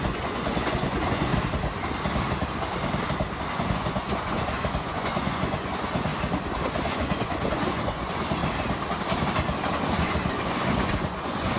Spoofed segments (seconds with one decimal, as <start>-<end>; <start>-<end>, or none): 0.0-1.3; 3.5-6.1; 6.9-8.4; 9.9-11.6